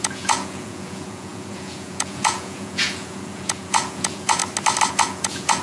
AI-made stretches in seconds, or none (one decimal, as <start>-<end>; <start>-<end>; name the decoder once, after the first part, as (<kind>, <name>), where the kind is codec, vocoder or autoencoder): 0.0-4.4 (vocoder, Vocos); 4.9-5.6